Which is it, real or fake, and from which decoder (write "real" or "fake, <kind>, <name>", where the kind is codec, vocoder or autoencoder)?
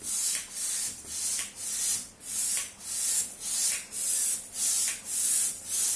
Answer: real